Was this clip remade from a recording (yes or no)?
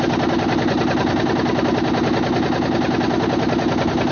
no